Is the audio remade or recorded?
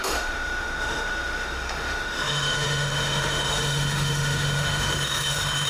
remade